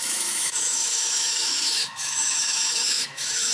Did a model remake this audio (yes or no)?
yes